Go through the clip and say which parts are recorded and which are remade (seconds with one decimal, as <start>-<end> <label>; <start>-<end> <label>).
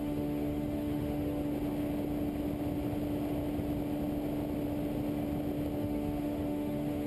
0.0-1.5 remade; 1.5-5.8 recorded; 5.8-7.1 remade